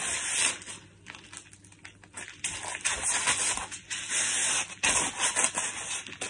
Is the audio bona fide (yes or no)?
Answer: yes